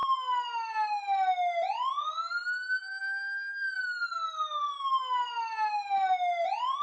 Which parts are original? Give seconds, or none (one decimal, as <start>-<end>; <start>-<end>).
0.0-6.8